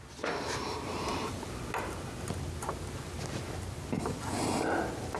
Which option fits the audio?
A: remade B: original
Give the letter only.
B